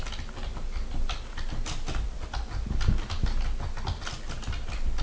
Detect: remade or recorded recorded